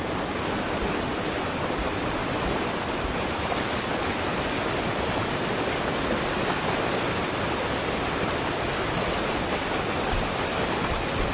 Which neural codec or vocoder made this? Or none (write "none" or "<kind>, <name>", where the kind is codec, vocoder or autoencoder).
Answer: none